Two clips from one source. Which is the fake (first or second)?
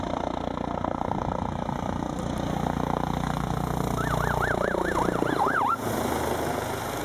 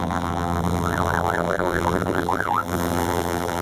second